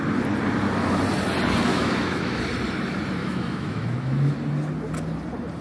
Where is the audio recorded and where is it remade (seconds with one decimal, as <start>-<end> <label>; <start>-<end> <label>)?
0.0-1.7 recorded; 1.7-2.4 remade; 2.4-3.2 recorded; 3.2-4.3 remade; 4.3-5.6 recorded